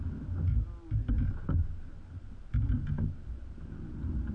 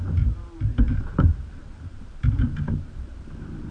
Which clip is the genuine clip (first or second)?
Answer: first